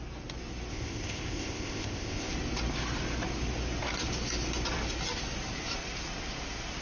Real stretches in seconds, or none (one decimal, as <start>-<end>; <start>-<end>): 0.0-0.7; 2.3-6.8